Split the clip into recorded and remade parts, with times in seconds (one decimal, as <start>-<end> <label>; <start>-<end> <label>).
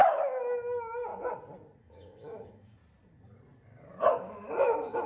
0.0-1.1 remade; 1.1-1.8 recorded; 1.8-2.8 remade; 2.8-4.2 recorded; 4.2-5.1 remade